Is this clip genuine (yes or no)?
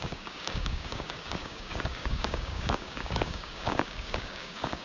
no